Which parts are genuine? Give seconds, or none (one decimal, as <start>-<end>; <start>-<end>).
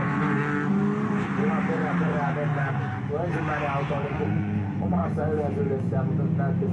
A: 0.4-3.8; 5.0-6.7